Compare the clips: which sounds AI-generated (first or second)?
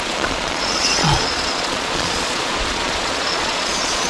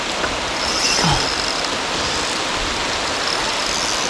first